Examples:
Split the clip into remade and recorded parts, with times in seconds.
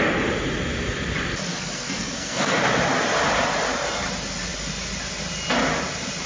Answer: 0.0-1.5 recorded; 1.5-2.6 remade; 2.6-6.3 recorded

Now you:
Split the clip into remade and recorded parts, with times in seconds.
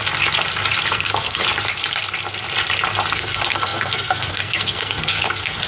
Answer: 0.0-0.9 recorded; 0.9-1.4 remade; 1.4-3.1 recorded; 3.1-5.7 remade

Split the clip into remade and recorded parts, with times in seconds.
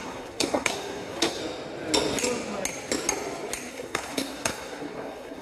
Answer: 0.0-1.4 remade; 1.4-3.7 recorded; 3.7-5.4 remade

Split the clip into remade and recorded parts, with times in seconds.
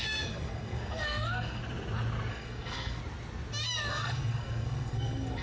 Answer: 0.0-1.6 remade; 1.6-2.3 recorded; 2.3-3.0 remade; 3.0-3.9 recorded; 3.9-5.4 remade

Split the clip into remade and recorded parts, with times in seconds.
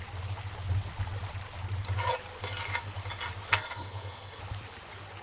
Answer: 0.0-3.5 recorded; 3.5-4.4 remade; 4.4-5.2 recorded